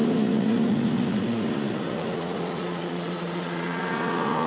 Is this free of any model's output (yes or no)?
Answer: no